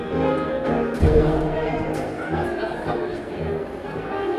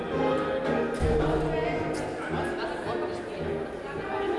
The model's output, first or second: first